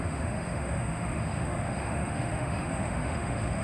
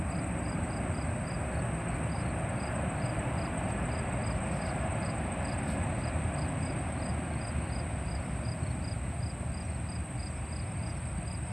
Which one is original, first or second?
second